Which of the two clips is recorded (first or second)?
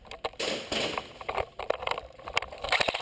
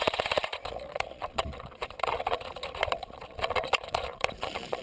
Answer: first